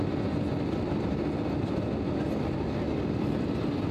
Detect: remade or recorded recorded